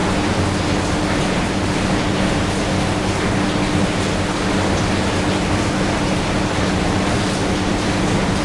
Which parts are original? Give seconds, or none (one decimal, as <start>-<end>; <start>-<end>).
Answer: 0.0-8.4